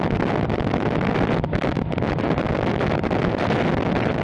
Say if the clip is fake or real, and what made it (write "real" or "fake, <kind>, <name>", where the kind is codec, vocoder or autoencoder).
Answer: real